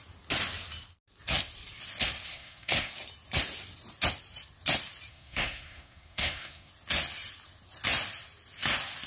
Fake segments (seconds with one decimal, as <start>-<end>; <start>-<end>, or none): 2.3-2.9; 5.1-6.7